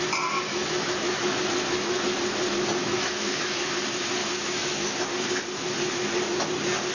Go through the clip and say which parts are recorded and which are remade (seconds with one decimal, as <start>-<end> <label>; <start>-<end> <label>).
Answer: 0.0-0.5 recorded; 0.5-1.4 remade; 1.4-2.8 recorded; 2.8-3.7 remade; 3.7-4.2 recorded; 4.2-5.0 remade; 5.0-6.9 recorded